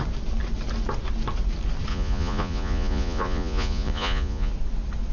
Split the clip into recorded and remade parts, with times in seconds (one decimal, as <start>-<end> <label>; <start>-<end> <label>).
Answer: 0.0-1.9 recorded; 1.9-4.5 remade; 4.5-5.1 recorded